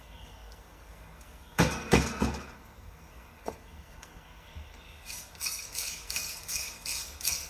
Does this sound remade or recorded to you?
remade